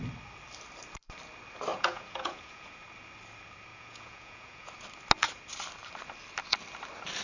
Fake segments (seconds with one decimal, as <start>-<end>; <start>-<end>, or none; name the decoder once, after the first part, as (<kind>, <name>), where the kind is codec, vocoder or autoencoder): 1.7-2.7 (vocoder, Vocos); 3.7-4.7